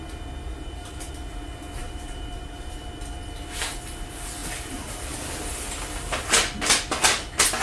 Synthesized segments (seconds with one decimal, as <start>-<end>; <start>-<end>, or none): 0.5-1.1; 1.8-3.0